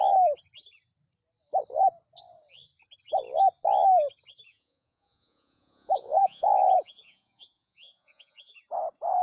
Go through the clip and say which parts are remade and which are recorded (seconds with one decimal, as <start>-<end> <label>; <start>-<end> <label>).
0.0-4.5 recorded; 4.5-8.6 remade; 8.6-9.2 recorded